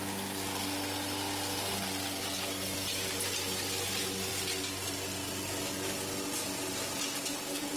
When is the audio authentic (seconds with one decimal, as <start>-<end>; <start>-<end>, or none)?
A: 0.0-7.8